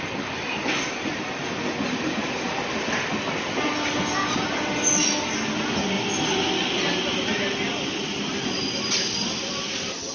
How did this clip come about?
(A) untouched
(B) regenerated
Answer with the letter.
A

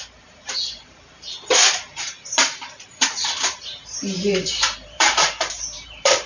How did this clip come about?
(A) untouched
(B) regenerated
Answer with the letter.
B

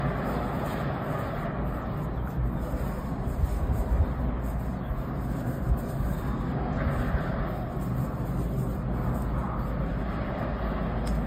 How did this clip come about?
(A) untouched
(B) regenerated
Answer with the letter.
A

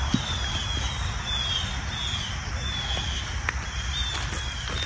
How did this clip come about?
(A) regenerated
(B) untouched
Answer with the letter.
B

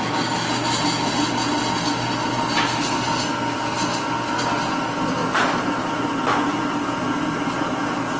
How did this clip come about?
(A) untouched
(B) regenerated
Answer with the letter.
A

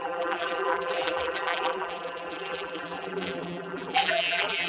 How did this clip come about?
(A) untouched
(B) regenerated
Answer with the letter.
B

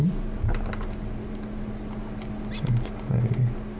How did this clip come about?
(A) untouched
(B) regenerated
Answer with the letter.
A